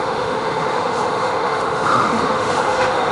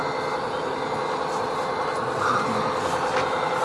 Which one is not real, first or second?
first